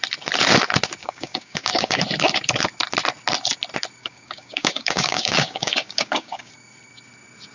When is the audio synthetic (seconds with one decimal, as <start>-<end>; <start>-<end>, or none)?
1.0-2.0; 4.0-6.5